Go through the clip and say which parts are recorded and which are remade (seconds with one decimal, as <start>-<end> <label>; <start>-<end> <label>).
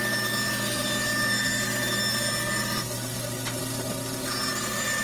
0.0-5.0 recorded